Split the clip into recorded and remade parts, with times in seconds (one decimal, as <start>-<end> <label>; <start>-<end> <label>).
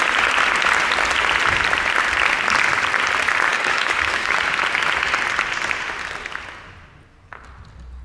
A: 0.0-3.5 recorded; 3.5-4.4 remade; 4.4-8.0 recorded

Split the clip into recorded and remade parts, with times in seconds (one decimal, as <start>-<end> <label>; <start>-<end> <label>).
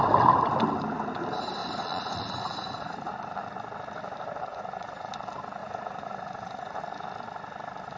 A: 0.0-1.6 recorded; 1.6-3.1 remade; 3.1-4.5 recorded; 4.5-5.1 remade; 5.1-5.6 recorded; 5.6-6.8 remade; 6.8-8.0 recorded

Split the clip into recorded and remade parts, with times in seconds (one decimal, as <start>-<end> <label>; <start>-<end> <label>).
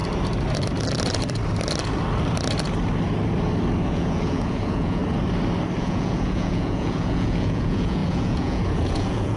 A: 0.0-3.9 recorded; 3.9-5.0 remade; 5.0-5.8 recorded; 5.8-9.4 remade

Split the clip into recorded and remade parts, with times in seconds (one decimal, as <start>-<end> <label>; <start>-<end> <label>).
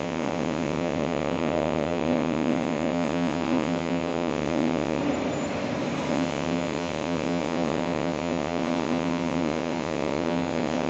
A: 0.0-5.0 remade; 5.0-6.1 recorded; 6.1-10.9 remade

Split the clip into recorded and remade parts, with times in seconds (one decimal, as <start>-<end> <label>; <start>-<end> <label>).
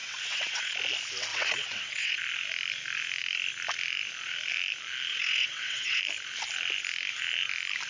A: 0.0-0.7 remade; 0.7-1.3 recorded; 1.3-2.2 remade; 2.2-5.1 recorded; 5.1-6.0 remade; 6.0-7.9 recorded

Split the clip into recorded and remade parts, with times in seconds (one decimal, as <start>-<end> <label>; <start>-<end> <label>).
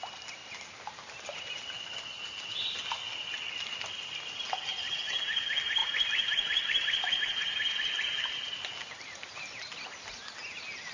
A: 0.0-10.9 recorded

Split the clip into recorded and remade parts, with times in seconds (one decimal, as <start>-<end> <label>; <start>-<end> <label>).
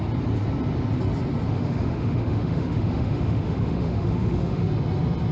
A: 0.0-1.5 recorded; 1.5-4.7 remade; 4.7-5.3 recorded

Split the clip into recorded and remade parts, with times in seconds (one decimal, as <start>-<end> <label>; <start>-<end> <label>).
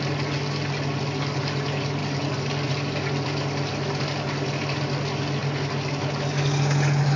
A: 0.0-7.2 recorded